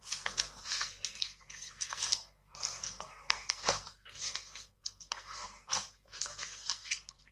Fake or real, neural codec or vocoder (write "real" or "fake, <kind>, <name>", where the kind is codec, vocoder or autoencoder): fake, codec, SNAC